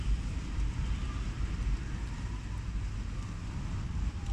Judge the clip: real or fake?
real